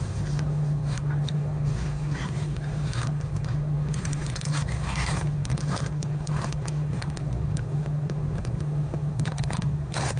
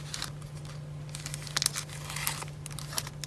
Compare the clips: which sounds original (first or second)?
second